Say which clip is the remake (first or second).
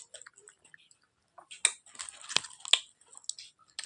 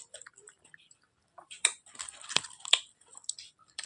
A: second